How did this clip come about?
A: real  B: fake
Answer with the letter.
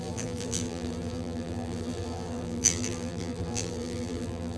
B